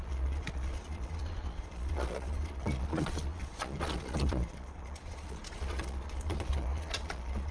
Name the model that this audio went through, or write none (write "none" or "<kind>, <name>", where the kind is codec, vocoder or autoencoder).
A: vocoder, Vocos